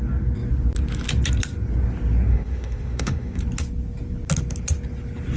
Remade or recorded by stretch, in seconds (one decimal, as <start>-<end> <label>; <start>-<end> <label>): 0.0-2.3 recorded; 2.3-3.4 remade; 3.4-5.4 recorded